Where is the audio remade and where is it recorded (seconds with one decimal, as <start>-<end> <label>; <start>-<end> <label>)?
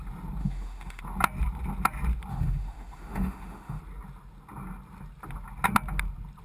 0.0-0.4 recorded; 0.4-1.0 remade; 1.0-2.3 recorded; 2.3-3.8 remade; 3.8-6.4 recorded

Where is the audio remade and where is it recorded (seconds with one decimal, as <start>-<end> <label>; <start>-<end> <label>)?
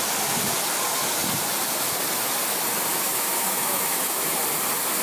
0.0-2.9 recorded; 2.9-4.4 remade; 4.4-5.0 recorded